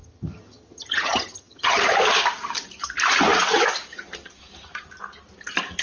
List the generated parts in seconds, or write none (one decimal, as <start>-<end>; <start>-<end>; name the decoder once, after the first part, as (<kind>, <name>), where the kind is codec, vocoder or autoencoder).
0.0-1.8 (vocoder, HiFi-GAN)